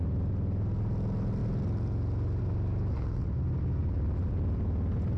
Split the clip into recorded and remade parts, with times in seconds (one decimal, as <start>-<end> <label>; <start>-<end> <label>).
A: 0.0-1.4 recorded; 1.4-1.9 remade; 1.9-3.8 recorded; 3.8-4.7 remade; 4.7-5.2 recorded